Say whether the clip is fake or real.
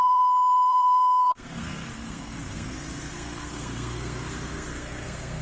fake